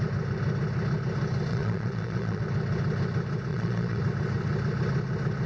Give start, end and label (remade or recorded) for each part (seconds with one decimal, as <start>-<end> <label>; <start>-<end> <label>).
0.0-1.5 recorded; 1.5-2.4 remade; 2.4-3.5 recorded; 3.5-4.0 remade; 4.0-5.5 recorded